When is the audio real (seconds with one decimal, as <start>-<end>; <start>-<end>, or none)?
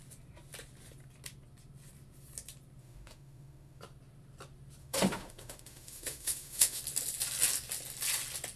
0.0-2.8; 3.8-4.8; 6.8-8.6